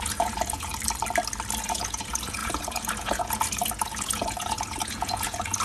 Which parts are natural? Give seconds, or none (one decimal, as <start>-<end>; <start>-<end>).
0.7-1.6